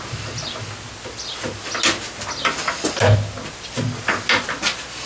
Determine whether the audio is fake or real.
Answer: real